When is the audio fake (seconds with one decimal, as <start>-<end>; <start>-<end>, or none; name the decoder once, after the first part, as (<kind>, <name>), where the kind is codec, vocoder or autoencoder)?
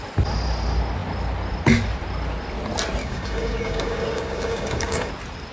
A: 3.0-5.1 (codec, DAC)